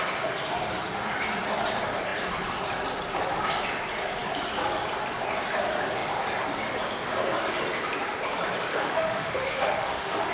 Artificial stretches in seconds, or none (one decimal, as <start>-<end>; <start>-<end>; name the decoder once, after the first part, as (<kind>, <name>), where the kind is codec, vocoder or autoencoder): 8.7-10.3 (autoencoder, DAC-VAE)